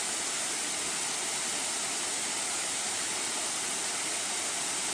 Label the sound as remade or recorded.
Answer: recorded